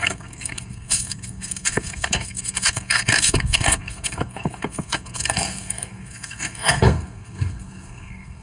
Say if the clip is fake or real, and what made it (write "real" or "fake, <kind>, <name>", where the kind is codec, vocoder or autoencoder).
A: fake, codec, SNAC